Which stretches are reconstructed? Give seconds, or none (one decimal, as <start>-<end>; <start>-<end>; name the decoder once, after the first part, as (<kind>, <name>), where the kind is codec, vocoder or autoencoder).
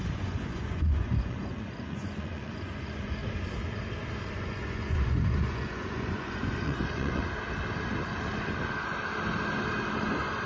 0.0-3.2 (vocoder, Vocos); 4.4-7.2